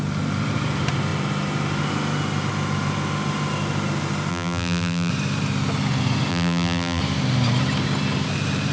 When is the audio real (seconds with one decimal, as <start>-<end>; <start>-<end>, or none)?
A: 0.0-4.3; 5.1-6.3; 7.0-8.7